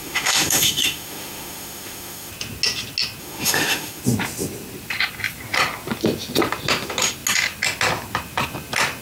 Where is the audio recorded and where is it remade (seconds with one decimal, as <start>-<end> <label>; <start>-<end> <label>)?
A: 0.0-2.3 remade; 2.3-3.2 recorded; 3.2-4.0 remade; 4.0-9.0 recorded